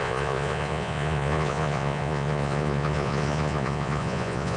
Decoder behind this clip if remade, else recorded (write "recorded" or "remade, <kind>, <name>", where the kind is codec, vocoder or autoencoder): remade, vocoder, Vocos